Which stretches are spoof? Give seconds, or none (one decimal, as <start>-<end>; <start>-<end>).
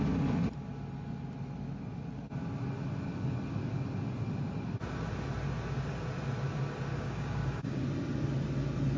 6.9-7.8